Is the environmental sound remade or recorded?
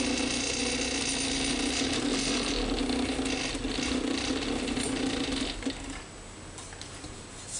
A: recorded